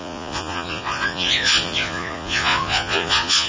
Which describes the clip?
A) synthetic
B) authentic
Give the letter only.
A